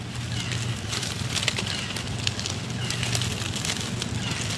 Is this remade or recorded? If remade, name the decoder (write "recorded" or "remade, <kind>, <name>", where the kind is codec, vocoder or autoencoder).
recorded